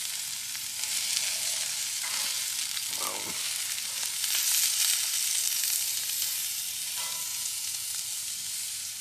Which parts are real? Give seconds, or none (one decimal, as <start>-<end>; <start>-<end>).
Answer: 0.0-7.3; 7.9-9.0